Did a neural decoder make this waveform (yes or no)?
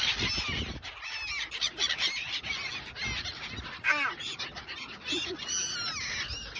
no